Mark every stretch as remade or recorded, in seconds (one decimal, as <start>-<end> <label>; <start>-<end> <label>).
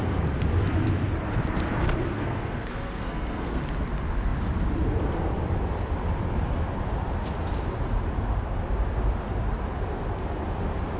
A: 0.0-2.1 recorded; 2.1-3.6 remade; 3.6-11.0 recorded